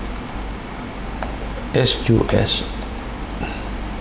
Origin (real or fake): fake